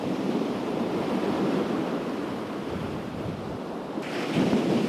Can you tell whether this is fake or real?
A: fake